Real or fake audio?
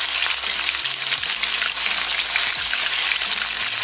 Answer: real